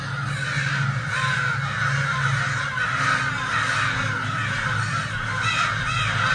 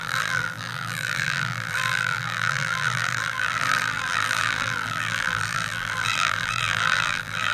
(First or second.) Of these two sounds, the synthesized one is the second